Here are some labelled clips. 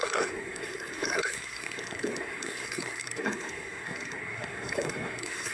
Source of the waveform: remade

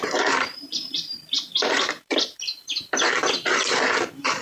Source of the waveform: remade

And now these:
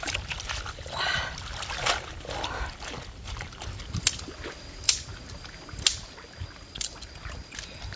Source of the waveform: recorded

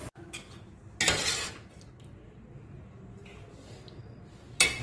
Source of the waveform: recorded